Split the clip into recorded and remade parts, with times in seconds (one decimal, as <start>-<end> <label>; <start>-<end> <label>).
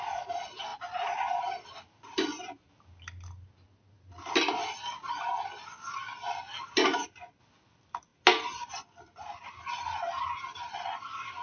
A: 0.0-11.4 recorded